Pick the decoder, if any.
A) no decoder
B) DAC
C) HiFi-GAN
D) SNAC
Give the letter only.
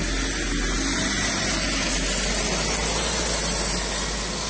A